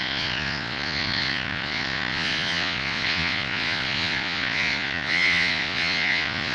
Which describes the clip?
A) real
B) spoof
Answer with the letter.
B